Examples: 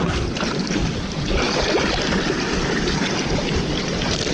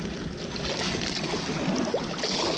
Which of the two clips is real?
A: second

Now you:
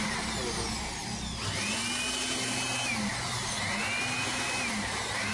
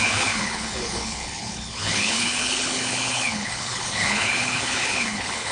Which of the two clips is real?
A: first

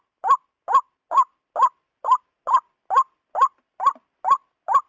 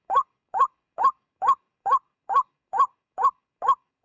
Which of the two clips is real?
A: first